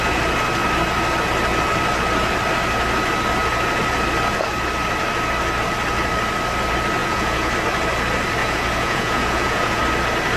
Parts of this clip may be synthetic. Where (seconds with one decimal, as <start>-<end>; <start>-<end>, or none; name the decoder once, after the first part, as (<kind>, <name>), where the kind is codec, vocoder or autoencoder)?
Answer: 7.0-7.5 (vocoder, Vocos); 8.4-9.8